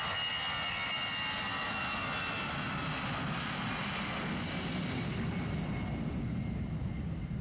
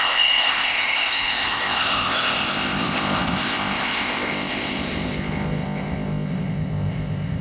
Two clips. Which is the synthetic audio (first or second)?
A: second